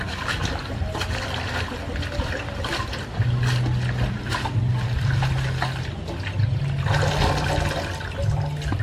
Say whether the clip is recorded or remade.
recorded